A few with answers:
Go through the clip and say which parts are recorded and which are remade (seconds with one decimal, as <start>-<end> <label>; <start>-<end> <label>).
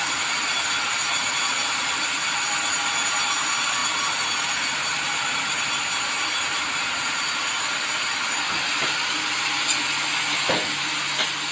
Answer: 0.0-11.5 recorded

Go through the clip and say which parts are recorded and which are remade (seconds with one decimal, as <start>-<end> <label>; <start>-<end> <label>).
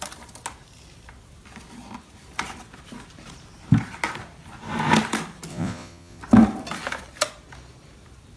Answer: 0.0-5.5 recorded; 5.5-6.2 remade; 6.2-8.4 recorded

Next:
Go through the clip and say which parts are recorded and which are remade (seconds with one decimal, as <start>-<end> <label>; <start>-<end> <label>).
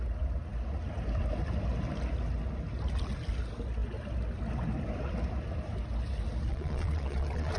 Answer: 0.0-6.5 recorded; 6.5-7.6 remade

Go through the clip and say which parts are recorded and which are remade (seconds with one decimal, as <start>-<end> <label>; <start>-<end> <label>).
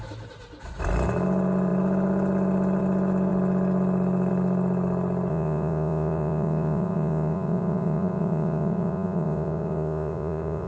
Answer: 0.0-5.3 recorded; 5.3-10.7 remade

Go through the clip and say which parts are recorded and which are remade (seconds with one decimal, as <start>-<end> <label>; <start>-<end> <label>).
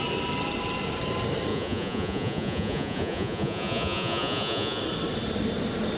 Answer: 0.0-1.5 recorded; 1.5-4.8 remade; 4.8-6.0 recorded